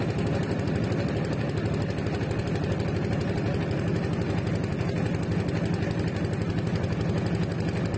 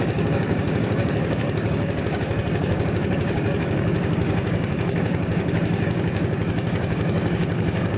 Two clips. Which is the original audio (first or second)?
first